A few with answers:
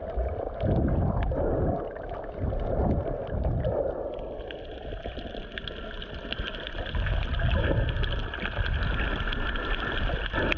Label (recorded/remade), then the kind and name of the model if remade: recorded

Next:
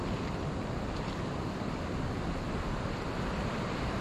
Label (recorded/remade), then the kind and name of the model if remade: recorded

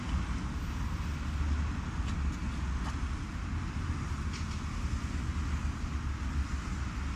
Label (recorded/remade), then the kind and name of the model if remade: recorded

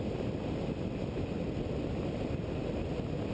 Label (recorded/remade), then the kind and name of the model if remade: recorded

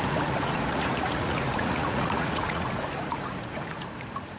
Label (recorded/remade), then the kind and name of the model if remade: remade, vocoder, Vocos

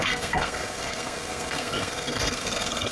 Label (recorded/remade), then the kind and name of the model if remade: remade, codec, SNAC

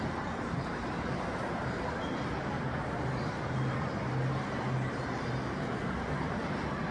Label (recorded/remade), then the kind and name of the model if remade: remade, vocoder, BigVGAN v2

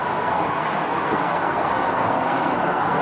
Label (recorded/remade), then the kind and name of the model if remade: remade, codec, SNAC